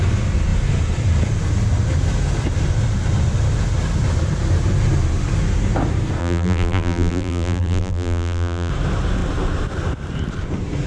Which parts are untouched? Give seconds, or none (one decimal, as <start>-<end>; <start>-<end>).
0.0-6.2; 8.7-10.9